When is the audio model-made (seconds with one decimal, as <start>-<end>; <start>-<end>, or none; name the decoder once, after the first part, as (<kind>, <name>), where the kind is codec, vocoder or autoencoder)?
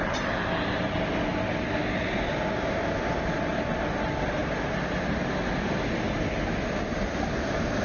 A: none